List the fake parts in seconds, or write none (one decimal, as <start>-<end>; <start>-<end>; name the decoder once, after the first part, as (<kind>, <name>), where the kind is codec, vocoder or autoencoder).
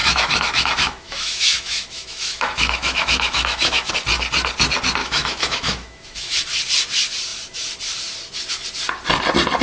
0.0-3.9 (autoencoder, DAC-VAE); 5.0-6.4